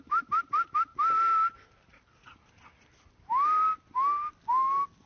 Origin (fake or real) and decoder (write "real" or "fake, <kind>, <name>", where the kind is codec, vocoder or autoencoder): real